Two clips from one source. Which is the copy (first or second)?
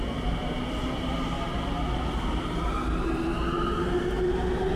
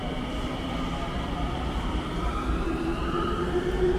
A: second